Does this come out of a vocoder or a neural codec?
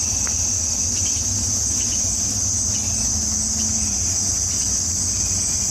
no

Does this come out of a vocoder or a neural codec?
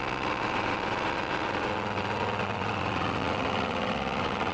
yes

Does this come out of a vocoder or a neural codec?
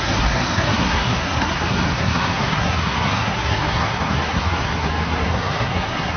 yes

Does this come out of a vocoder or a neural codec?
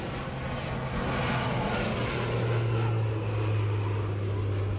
no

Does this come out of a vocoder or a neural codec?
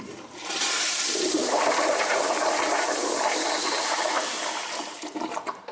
yes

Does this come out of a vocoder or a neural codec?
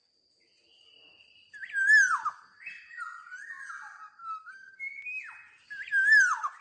no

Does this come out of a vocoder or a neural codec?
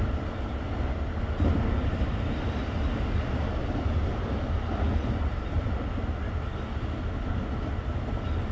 no